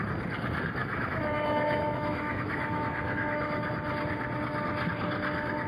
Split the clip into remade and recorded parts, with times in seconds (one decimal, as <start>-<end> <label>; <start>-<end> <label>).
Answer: 0.0-0.8 recorded; 0.8-3.7 remade; 3.7-5.7 recorded